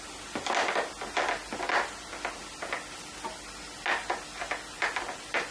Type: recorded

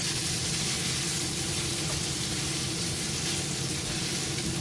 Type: recorded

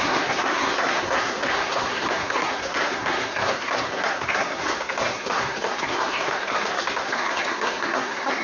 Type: remade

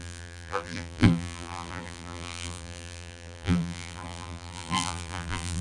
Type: remade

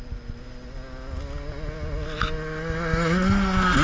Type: recorded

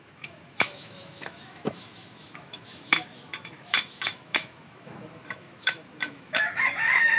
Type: remade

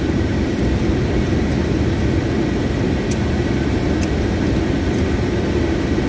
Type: recorded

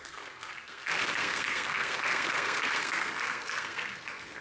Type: remade